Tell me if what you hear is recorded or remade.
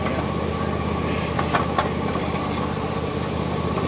recorded